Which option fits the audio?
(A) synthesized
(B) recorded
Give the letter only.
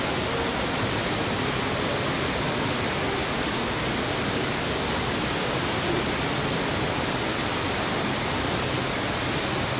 B